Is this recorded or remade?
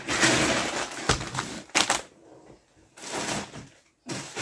recorded